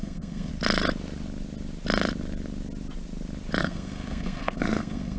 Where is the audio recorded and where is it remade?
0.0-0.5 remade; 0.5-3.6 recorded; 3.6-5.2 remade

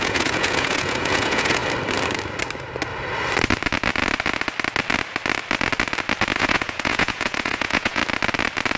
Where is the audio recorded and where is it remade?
0.0-1.6 remade; 1.6-6.4 recorded; 6.4-8.0 remade; 8.0-8.8 recorded

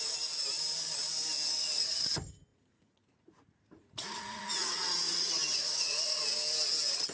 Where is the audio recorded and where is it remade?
0.0-2.5 recorded; 2.5-6.2 remade; 6.2-7.1 recorded

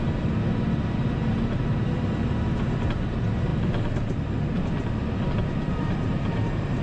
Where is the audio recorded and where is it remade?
0.0-3.5 remade; 3.5-5.7 recorded; 5.7-6.8 remade